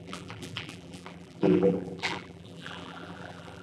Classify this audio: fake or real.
fake